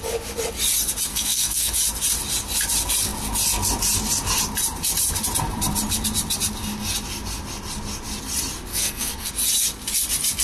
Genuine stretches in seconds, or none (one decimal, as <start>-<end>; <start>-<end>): 0.0-1.1; 1.7-8.7; 9.3-10.4